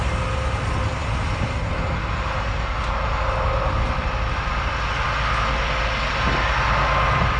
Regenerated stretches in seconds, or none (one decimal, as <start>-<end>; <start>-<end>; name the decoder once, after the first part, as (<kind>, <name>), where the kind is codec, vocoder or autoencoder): none